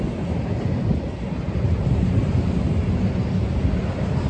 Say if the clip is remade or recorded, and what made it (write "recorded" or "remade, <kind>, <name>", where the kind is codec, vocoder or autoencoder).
recorded